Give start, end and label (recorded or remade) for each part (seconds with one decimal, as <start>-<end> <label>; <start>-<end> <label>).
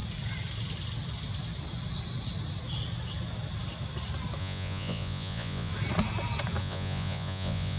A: 0.0-4.4 recorded; 4.4-5.7 remade; 5.7-6.6 recorded; 6.6-7.8 remade